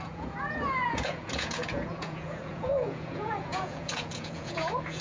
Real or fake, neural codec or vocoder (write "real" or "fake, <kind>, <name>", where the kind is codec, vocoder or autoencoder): fake, vocoder, Vocos